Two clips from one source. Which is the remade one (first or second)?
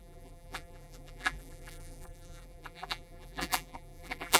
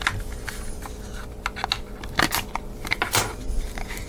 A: first